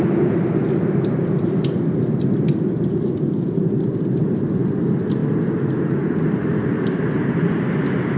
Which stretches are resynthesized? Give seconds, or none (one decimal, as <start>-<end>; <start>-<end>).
none